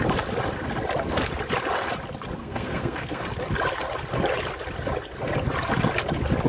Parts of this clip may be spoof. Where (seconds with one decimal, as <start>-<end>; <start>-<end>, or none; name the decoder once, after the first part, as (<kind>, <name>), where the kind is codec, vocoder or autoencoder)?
2.4-3.2 (codec, SNAC)